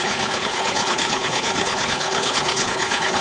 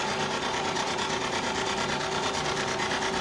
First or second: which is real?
second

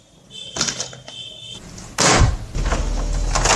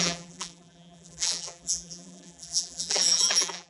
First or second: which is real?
first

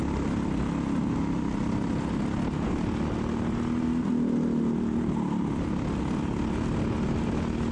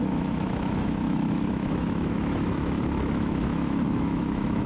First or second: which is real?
first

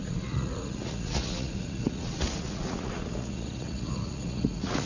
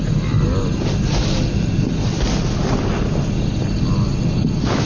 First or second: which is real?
second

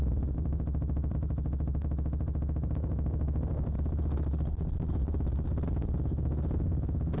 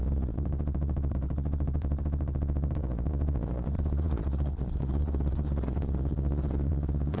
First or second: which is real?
first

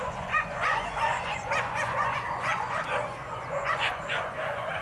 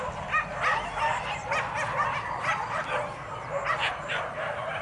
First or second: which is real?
second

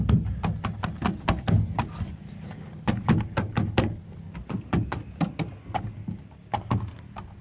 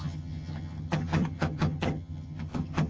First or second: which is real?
first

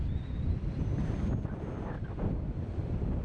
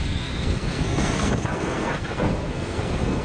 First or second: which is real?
first